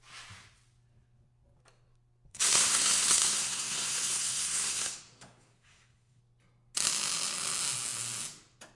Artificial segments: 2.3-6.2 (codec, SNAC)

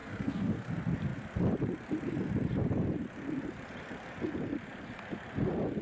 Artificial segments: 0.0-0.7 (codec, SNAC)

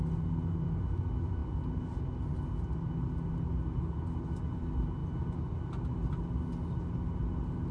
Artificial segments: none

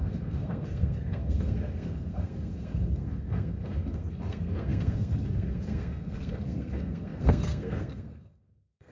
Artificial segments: 0.0-8.9 (codec, SNAC)

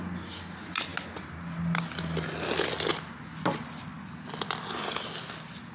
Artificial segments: none